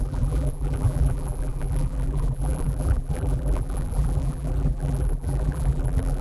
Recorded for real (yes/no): no